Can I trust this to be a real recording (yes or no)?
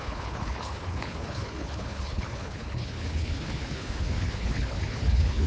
no